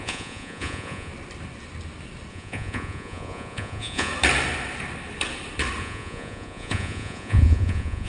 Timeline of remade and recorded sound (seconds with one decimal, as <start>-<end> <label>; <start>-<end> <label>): 0.0-1.1 remade; 1.1-2.3 recorded; 2.3-4.1 remade; 4.1-5.8 recorded; 5.8-8.1 remade